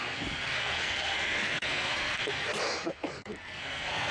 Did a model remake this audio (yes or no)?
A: yes